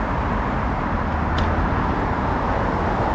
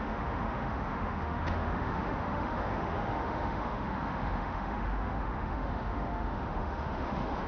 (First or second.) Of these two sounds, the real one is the first